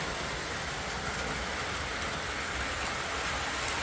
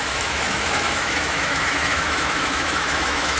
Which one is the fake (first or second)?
second